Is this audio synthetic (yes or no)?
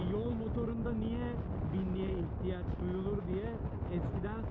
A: no